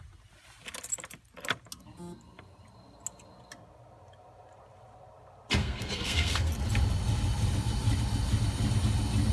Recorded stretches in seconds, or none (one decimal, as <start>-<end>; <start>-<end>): 0.0-5.6; 6.5-9.3